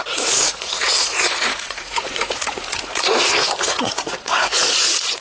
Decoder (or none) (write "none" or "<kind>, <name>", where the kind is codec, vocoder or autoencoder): vocoder, Vocos